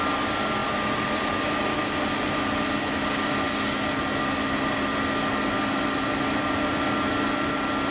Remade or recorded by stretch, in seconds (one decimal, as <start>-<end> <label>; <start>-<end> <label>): 0.0-7.9 recorded